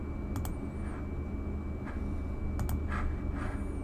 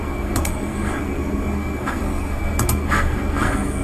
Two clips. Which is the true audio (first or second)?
first